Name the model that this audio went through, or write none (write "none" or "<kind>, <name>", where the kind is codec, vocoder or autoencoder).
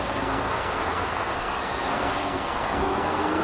codec, SNAC